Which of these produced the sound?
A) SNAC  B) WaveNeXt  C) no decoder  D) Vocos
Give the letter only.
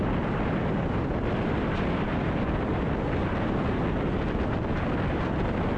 C